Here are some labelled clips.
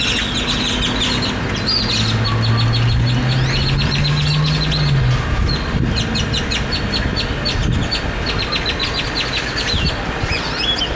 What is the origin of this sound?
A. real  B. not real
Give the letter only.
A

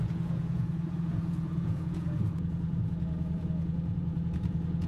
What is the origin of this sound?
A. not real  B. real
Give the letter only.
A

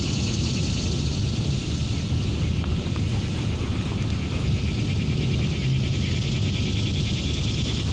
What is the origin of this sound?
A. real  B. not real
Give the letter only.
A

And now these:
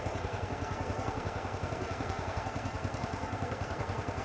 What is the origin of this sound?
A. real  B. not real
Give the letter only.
B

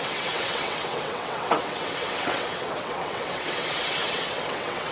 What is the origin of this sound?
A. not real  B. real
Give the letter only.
A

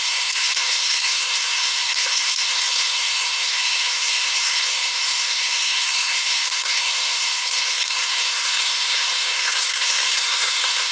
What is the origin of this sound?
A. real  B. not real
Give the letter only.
B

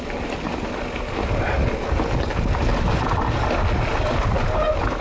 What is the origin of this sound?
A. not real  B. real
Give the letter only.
B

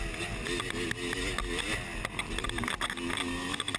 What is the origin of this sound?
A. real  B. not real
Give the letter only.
A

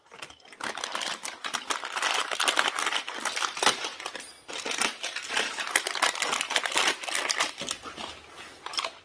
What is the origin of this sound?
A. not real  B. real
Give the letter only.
B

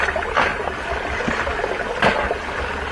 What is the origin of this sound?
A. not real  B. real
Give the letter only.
B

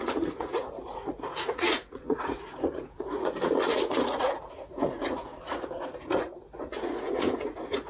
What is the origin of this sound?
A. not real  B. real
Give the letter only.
A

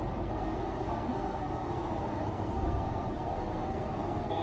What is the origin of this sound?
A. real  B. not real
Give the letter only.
B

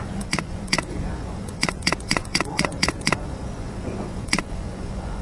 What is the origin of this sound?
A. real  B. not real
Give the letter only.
B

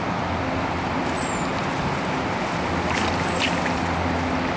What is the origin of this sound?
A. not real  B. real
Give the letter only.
B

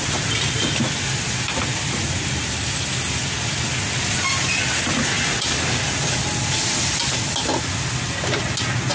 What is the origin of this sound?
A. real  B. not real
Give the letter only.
A